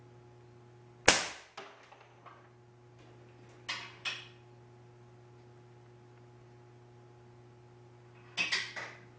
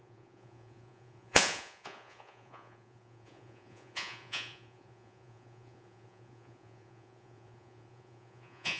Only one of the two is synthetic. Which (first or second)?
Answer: second